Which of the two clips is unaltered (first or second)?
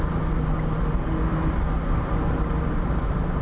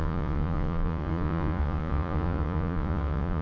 first